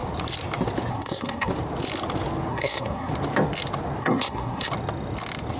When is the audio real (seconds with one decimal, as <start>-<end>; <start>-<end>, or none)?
0.0-0.9; 1.5-2.5; 3.1-4.0; 4.7-5.6